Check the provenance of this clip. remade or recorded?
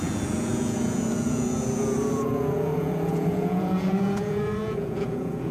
remade